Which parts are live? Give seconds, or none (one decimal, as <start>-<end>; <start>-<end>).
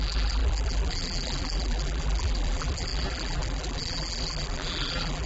none